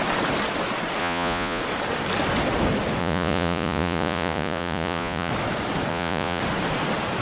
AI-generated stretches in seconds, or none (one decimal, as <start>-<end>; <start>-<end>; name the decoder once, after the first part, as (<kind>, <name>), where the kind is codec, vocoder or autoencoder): 1.0-1.6 (vocoder, Vocos); 3.0-5.3; 5.9-6.4